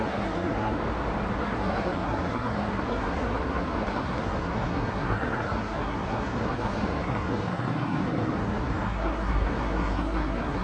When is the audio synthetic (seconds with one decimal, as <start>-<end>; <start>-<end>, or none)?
0.0-0.8; 1.4-10.6